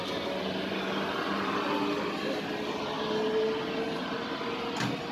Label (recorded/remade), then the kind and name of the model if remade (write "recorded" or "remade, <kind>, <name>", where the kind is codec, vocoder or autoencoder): recorded